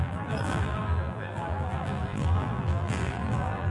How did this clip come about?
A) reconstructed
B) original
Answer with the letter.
A